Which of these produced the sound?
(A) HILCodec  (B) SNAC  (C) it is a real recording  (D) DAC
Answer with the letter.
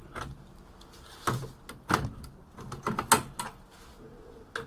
C